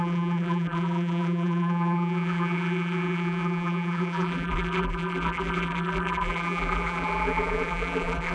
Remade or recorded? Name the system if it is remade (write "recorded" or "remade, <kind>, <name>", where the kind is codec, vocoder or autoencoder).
remade, vocoder, BigVGAN v2